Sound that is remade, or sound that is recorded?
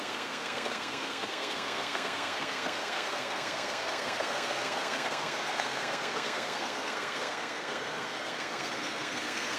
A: remade